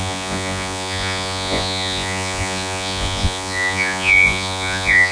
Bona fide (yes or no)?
no